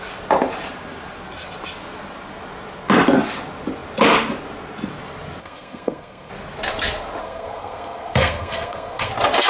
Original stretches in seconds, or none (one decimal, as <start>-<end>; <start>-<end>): 0.0-5.4; 6.3-7.2; 9.1-9.5